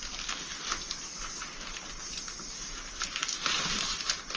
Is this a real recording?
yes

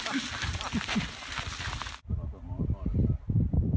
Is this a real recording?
yes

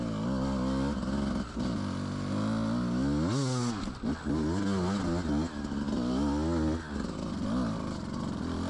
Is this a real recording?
yes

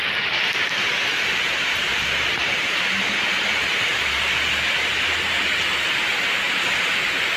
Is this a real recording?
no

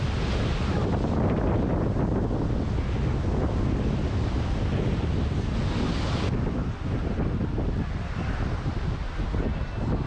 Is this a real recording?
yes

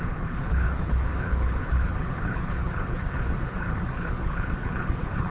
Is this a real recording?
no